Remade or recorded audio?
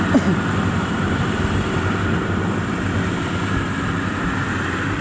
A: recorded